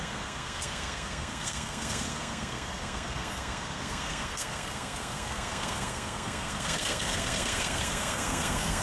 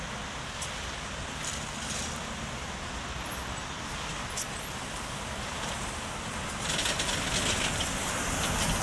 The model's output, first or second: first